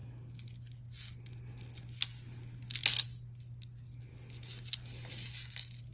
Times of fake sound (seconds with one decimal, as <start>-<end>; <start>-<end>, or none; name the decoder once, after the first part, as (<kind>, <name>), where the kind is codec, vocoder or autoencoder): none

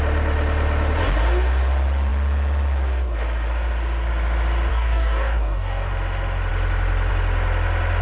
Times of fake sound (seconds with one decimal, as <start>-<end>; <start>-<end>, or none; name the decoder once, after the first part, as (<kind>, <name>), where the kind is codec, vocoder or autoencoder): 4.7-5.9 (codec, DAC)

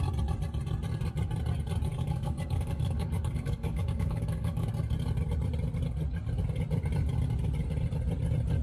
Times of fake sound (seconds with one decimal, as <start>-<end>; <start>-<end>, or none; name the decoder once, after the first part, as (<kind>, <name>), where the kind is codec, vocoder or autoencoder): 1.9-4.7 (codec, DAC)

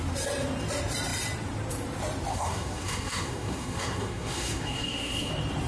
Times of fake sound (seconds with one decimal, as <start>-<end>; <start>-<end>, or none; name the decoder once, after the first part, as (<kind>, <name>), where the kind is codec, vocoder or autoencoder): 2.3-5.3 (codec, SNAC)